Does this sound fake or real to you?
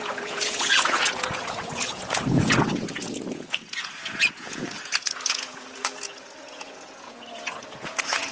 fake